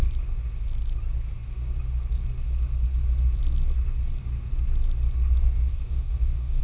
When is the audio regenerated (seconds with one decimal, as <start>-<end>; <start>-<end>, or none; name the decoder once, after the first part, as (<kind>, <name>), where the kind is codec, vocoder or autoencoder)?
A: 5.7-6.6 (codec, DAC)